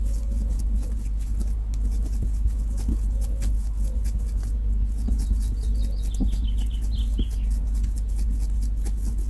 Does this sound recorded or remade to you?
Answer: recorded